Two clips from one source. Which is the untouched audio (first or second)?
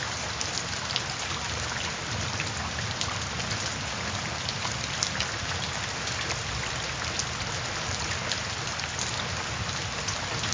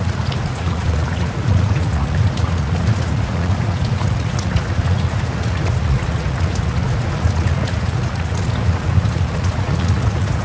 first